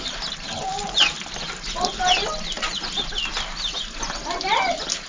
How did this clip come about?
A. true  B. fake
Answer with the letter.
A